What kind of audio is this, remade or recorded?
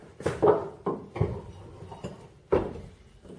recorded